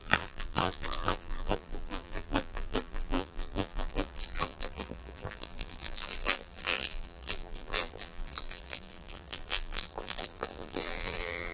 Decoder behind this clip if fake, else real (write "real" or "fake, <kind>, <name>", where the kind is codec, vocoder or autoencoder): fake, vocoder, BigVGAN v2